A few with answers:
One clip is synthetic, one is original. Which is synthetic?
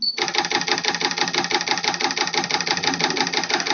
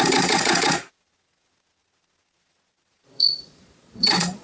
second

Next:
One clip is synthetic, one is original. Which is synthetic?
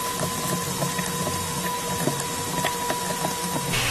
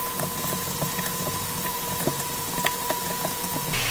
second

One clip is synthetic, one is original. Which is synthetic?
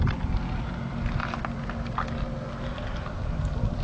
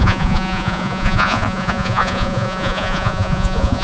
second